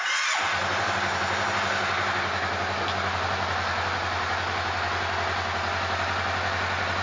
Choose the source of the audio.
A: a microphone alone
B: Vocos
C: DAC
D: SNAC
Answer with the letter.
A